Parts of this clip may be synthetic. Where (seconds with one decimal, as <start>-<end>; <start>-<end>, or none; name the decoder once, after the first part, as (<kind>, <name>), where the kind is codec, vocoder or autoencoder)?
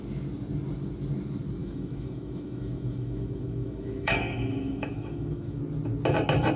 1.6-5.6 (autoencoder, DAC-VAE)